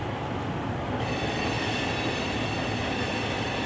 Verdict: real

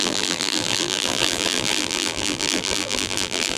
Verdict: fake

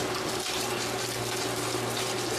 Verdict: real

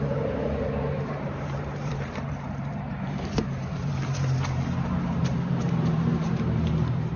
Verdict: fake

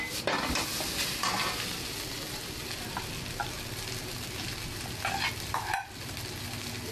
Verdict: real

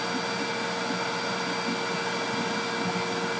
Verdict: real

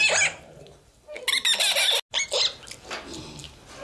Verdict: real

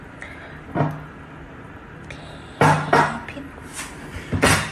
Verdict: real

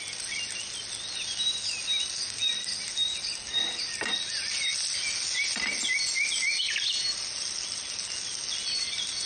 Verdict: real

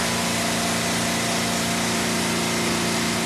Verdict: real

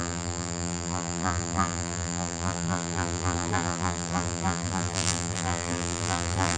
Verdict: fake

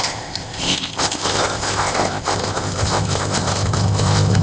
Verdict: fake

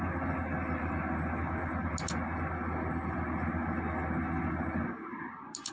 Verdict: real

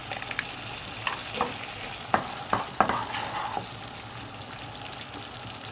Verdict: real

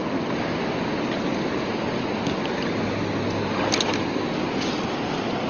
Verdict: real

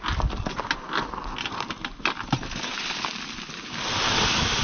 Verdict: real